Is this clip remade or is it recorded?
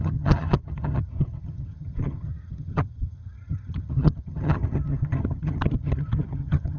remade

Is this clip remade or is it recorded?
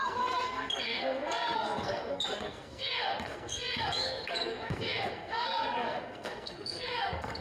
remade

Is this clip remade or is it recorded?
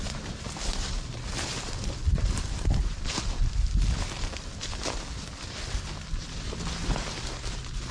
recorded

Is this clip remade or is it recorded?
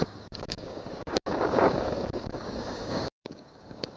remade